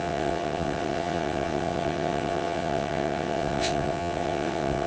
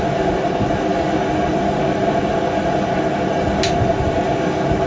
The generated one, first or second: first